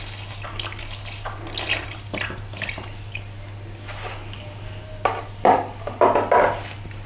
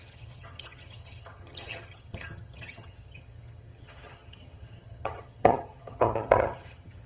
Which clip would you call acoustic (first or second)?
first